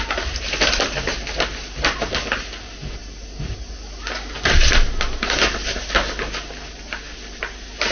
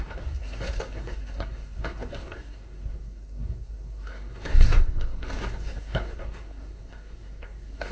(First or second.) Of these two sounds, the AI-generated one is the second